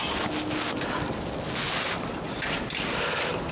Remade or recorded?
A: recorded